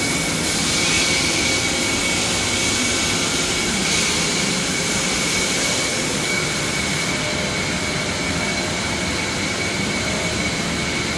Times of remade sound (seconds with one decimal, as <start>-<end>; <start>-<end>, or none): 5.9-6.5